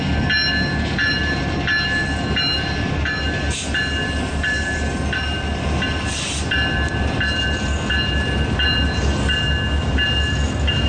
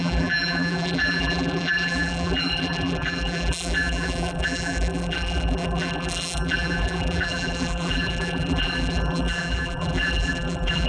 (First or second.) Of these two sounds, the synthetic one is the second